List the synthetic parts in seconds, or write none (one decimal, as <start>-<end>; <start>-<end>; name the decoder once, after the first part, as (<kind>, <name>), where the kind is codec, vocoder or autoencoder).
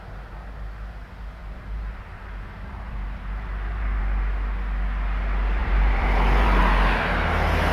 1.4-4.0 (vocoder, BigVGAN v2); 5.6-6.6